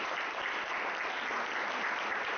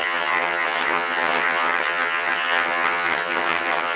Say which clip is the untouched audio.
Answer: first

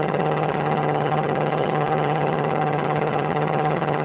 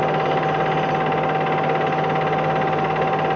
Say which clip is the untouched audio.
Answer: second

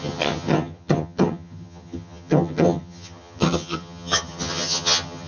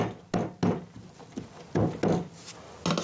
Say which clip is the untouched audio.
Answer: second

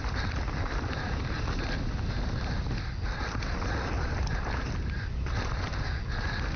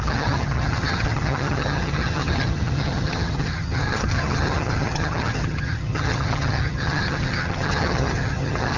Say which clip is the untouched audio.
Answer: first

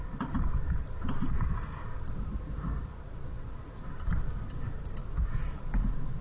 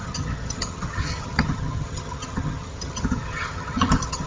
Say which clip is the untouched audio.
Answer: first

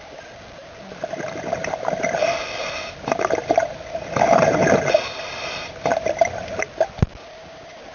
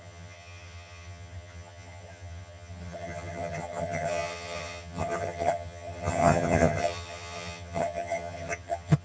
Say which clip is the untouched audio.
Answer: first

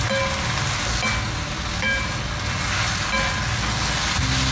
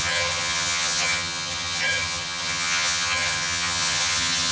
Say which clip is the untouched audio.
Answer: first